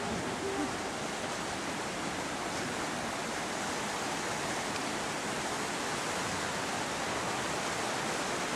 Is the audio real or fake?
real